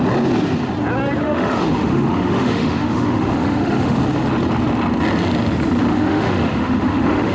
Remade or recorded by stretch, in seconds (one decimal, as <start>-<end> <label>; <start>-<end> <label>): 0.0-1.2 recorded; 1.2-4.0 remade; 4.0-5.9 recorded; 5.9-7.3 remade

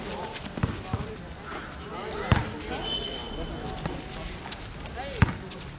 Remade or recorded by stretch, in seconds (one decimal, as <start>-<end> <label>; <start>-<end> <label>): 0.0-5.8 recorded